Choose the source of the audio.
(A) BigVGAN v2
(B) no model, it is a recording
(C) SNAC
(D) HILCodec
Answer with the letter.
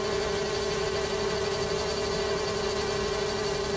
B